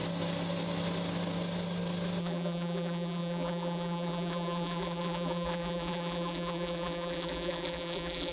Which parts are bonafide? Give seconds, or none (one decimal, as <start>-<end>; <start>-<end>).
0.0-2.2